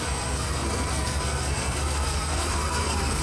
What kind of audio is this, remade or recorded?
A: remade